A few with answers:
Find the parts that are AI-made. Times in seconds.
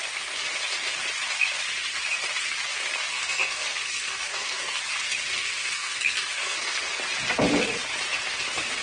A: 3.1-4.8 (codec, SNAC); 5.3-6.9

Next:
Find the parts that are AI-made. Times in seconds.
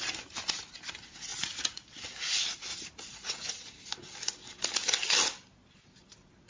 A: 1.3-1.9 (vocoder, Vocos); 2.7-3.5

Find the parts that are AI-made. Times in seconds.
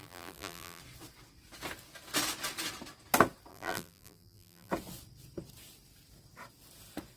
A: 0.0-0.8 (vocoder, BigVGAN v2); 3.5-4.7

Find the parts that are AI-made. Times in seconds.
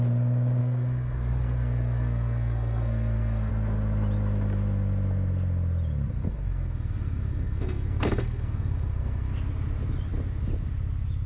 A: 0.6-3.5 (codec, SNAC); 6.2-9.3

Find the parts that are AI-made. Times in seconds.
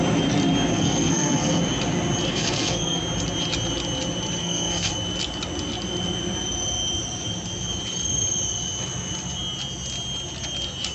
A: 0.7-1.6 (codec, SNAC); 2.3-3.0; 4.4-4.9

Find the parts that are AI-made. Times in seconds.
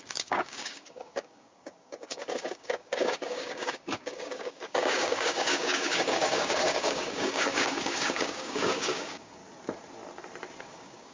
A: 0.0-9.4 (codec, DAC); 10.6-11.1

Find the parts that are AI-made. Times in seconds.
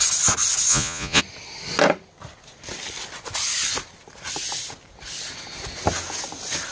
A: 0.7-1.2 (vocoder, Vocos)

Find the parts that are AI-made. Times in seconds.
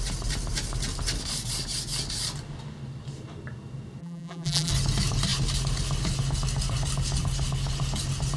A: 4.0-4.7 (vocoder, BigVGAN v2)